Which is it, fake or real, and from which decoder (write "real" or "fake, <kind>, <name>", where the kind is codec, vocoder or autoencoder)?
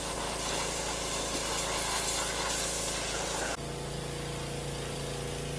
real